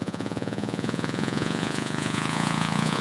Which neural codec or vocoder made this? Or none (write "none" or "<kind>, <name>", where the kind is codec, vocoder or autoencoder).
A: vocoder, Vocos